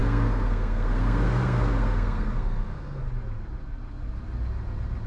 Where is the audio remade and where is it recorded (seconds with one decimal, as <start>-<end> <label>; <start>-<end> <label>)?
0.0-3.0 remade; 3.0-5.1 recorded